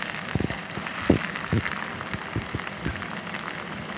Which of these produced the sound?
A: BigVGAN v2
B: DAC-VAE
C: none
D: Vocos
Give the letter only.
A